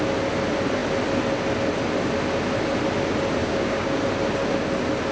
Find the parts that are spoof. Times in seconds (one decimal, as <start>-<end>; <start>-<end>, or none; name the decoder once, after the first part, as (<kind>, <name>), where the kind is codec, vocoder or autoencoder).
3.4-4.0 (codec, DAC)